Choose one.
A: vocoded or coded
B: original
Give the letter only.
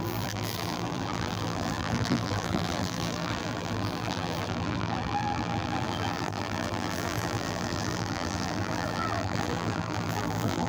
A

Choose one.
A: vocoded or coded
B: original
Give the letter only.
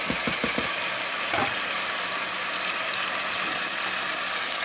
A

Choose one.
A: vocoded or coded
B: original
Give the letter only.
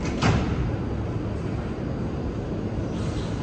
B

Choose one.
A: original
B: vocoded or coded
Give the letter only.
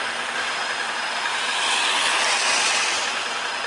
A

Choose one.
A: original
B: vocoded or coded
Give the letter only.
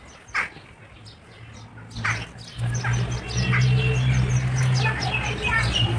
A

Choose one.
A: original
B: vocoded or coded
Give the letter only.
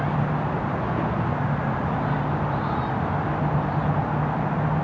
A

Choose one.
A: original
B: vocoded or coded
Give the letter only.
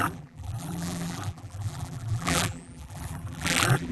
B